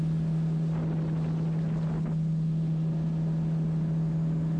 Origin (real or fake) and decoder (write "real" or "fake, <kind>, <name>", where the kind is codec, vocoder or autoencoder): real